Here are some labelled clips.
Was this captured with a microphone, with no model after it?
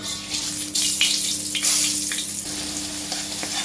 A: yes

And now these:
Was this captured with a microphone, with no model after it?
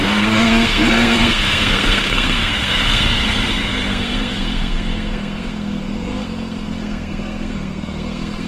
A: no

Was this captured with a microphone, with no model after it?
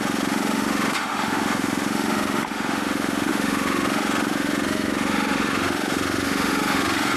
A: no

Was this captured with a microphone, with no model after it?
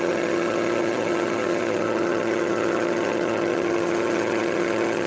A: no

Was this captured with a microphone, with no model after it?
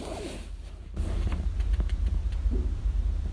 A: no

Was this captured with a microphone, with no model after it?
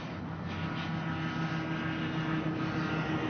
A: yes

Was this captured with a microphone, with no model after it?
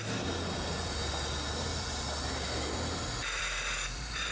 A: yes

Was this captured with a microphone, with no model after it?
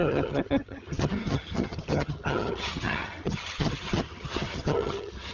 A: no